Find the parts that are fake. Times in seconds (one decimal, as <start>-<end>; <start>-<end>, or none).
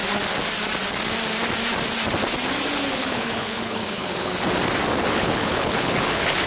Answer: 2.9-4.3; 5.1-6.5